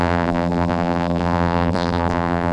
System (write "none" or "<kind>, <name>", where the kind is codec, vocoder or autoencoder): vocoder, BigVGAN v2